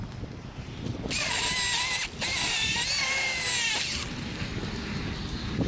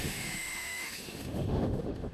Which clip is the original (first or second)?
first